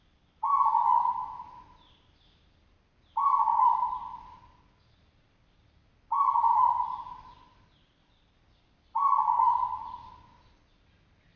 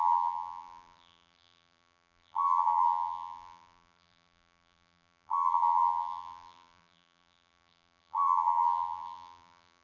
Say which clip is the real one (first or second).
first